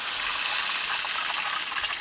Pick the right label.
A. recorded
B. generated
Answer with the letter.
A